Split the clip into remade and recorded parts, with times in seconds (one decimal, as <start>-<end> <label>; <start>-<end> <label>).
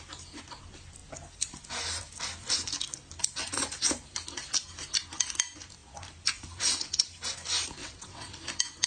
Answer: 0.0-7.8 recorded; 7.8-8.3 remade; 8.3-8.9 recorded